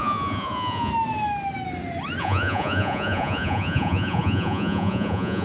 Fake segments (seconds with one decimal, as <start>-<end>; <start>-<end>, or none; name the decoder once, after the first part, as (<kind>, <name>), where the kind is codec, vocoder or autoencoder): 0.0-0.9 (vocoder, Vocos); 2.2-5.4